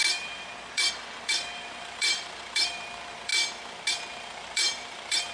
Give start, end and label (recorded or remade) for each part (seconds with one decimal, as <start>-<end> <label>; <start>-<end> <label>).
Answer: 0.0-3.3 remade; 3.3-3.9 recorded; 3.9-5.3 remade